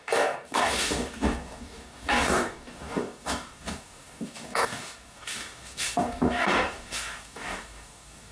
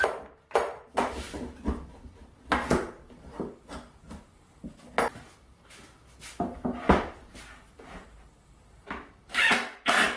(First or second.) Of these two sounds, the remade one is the first